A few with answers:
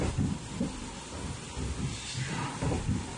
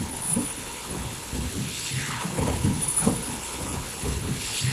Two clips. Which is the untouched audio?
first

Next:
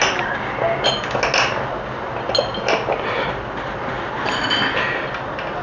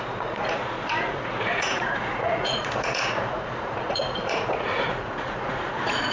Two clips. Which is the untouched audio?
first